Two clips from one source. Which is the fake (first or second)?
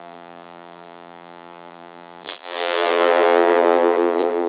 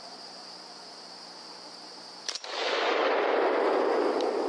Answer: first